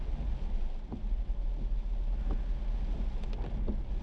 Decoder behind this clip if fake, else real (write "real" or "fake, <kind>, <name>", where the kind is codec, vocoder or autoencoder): real